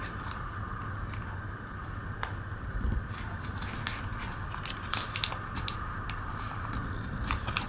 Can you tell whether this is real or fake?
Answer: real